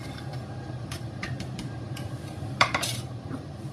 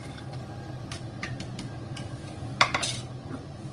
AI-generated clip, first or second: first